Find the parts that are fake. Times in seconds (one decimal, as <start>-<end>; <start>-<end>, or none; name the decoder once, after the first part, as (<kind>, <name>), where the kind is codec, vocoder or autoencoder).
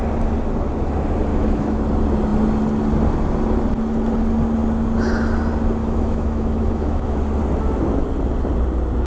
1.3-1.8 (autoencoder, DAC-VAE); 5.8-7.2